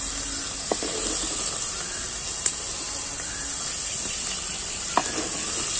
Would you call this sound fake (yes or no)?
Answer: no